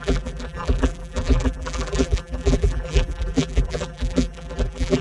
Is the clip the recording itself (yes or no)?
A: no